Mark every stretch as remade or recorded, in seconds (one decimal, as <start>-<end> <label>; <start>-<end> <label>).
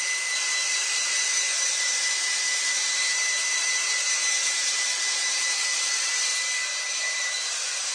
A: 0.0-6.3 remade; 6.3-6.9 recorded; 6.9-7.9 remade